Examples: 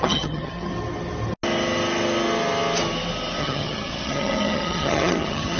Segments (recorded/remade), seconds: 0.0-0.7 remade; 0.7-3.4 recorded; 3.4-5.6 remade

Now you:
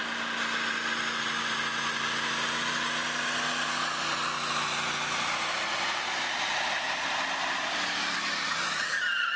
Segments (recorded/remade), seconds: 0.0-9.4 recorded

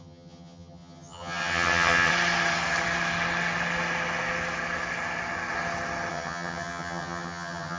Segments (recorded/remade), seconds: 0.0-2.1 remade; 2.1-6.1 recorded; 6.1-7.8 remade

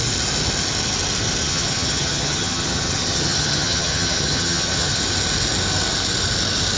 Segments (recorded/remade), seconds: 0.0-1.4 recorded; 1.4-5.0 remade; 5.0-6.8 recorded